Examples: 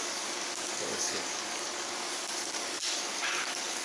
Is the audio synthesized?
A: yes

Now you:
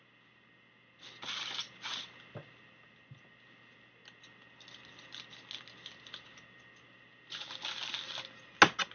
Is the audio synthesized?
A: no